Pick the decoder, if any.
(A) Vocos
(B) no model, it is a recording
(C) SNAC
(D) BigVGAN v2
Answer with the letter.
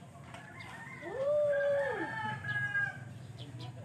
D